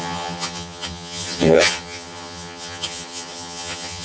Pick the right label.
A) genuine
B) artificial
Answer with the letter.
B